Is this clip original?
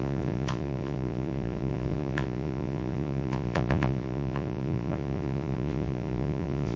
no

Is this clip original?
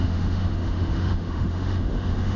no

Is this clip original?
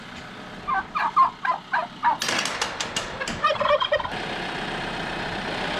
yes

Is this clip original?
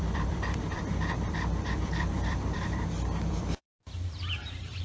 no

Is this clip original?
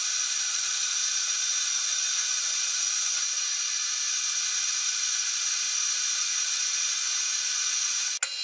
yes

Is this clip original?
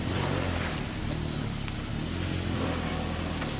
yes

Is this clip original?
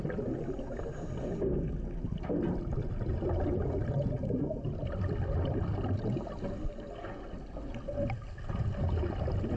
yes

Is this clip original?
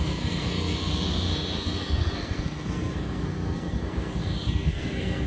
no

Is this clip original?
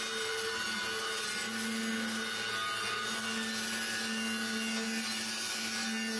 yes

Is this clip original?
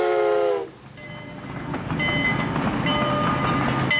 yes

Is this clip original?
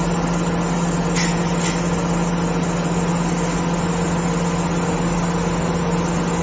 yes